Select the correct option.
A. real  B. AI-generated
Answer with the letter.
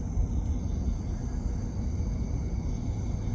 A